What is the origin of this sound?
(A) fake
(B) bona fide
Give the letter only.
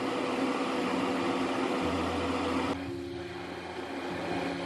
B